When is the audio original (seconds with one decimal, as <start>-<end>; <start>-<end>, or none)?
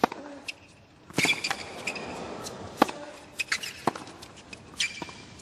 0.0-1.9; 3.1-5.4